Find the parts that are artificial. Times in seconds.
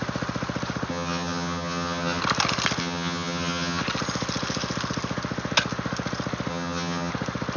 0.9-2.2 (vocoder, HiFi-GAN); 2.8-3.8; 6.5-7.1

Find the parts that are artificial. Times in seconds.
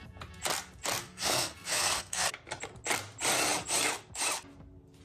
1.0-2.3 (codec, SNAC)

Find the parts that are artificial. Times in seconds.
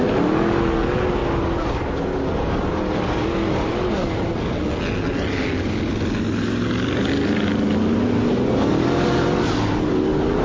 none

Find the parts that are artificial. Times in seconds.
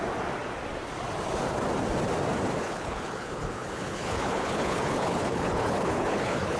2.6-6.6 (codec, HILCodec)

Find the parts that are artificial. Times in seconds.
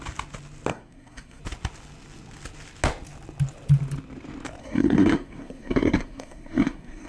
0.7-1.4 (codec, SNAC); 4.6-7.1